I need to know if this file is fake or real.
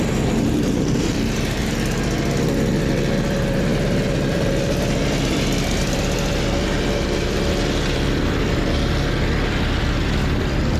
fake